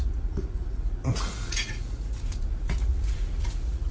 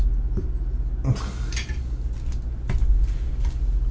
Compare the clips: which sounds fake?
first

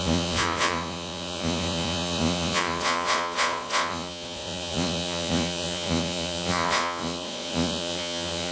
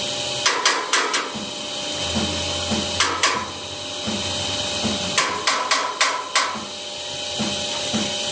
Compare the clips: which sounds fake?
first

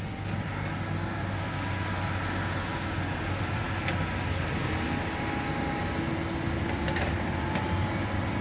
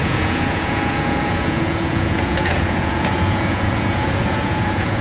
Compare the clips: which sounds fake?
second